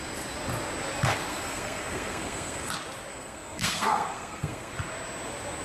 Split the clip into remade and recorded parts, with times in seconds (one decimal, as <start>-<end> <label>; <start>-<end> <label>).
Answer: 0.0-1.3 recorded; 1.3-2.7 remade; 2.7-3.1 recorded; 3.1-4.7 remade; 4.7-5.6 recorded